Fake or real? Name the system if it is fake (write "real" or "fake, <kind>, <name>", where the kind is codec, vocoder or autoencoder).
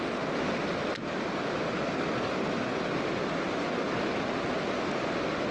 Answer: real